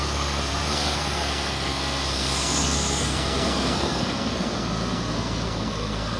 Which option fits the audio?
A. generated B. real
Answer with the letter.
A